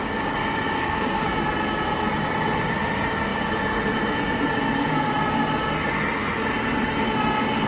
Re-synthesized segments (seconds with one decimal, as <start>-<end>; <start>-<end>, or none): 0.8-1.3